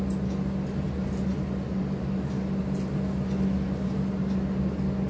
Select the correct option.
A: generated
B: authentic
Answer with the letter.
B